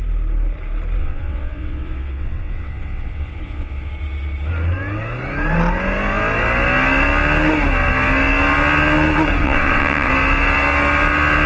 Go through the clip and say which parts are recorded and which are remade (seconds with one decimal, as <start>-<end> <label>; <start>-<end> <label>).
0.0-1.0 recorded; 1.0-3.9 remade; 3.9-9.4 recorded; 9.4-10.1 remade; 10.1-11.5 recorded